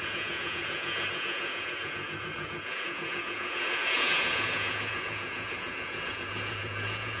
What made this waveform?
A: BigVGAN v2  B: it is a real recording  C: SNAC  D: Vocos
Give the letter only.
D